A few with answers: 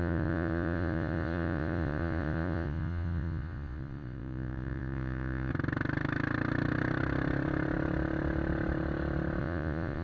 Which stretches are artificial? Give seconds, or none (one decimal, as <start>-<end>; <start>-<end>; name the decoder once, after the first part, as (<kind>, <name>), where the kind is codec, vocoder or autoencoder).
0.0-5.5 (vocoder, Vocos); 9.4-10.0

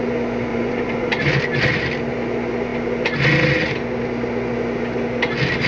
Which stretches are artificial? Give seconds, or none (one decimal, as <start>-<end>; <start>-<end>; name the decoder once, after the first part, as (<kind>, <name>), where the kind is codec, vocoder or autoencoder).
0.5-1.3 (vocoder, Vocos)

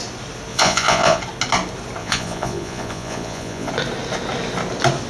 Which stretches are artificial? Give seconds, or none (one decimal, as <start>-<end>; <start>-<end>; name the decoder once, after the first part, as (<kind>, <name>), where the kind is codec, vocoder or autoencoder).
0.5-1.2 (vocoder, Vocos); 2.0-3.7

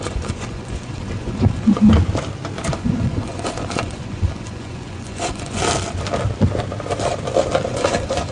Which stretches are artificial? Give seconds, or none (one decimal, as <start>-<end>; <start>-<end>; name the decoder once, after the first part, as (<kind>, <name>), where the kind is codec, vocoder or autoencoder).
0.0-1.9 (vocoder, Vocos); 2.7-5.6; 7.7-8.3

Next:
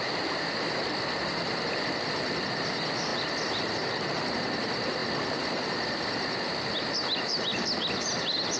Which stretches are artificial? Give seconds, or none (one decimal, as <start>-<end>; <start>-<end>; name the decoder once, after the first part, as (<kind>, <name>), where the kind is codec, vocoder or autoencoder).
none

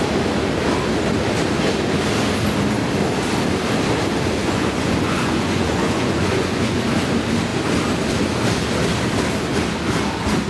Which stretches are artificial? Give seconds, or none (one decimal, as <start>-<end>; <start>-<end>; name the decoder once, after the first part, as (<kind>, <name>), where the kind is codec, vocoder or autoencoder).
4.4-6.8 (vocoder, Vocos)

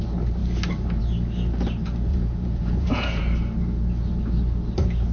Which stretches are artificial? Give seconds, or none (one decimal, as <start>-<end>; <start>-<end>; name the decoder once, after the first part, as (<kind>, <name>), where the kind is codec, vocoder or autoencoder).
2.1-3.2 (vocoder, Vocos)

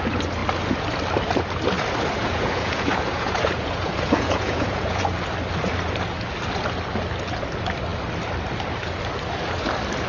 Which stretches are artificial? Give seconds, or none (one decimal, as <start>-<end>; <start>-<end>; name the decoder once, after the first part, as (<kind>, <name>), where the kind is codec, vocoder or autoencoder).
2.2-5.1 (vocoder, Vocos)